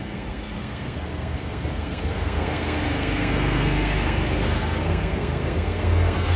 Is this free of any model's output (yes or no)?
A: no